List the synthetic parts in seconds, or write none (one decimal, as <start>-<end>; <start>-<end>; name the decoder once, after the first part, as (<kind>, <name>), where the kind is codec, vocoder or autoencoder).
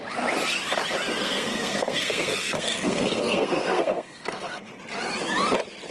1.2-4.7 (codec, SNAC)